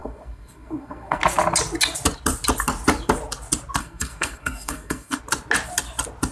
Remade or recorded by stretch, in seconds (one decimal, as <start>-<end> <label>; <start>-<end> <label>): 0.0-1.2 remade; 1.2-3.8 recorded; 3.8-5.2 remade; 5.2-6.3 recorded